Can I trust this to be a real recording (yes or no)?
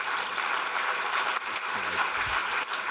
no